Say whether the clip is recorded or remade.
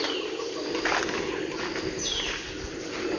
recorded